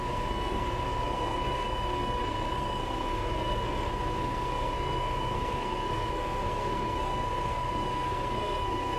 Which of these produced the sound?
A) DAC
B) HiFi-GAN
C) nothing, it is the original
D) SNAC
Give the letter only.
D